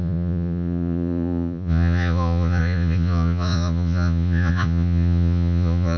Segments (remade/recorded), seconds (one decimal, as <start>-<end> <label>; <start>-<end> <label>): 0.0-6.0 remade